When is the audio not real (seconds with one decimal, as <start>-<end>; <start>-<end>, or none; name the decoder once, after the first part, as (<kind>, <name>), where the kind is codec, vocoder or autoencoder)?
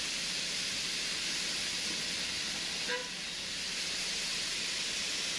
none